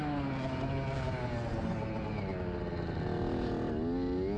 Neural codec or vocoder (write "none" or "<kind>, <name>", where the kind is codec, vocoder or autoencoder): none